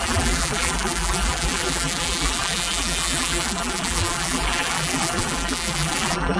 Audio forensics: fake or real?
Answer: fake